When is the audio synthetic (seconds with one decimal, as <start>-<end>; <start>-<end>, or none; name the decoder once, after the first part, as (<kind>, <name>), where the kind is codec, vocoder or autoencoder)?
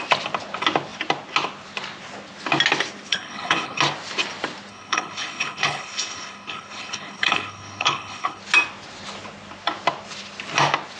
3.1-3.8 (codec, HILCodec); 4.7-8.4